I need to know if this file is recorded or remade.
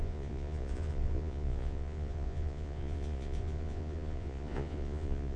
remade